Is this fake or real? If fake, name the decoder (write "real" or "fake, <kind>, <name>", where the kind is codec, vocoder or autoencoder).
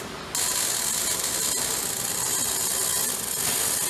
real